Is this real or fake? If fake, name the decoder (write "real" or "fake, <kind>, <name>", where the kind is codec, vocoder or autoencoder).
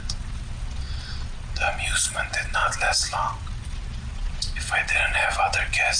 fake, vocoder, Vocos